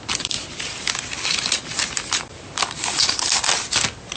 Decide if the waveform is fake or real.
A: real